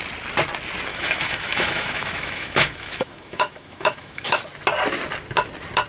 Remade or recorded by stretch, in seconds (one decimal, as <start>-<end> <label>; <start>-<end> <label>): 0.0-0.9 recorded; 0.9-4.4 remade; 4.4-5.9 recorded